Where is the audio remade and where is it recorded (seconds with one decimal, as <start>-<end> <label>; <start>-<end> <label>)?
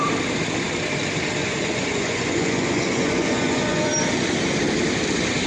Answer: 0.0-1.4 recorded; 1.4-3.9 remade; 3.9-5.5 recorded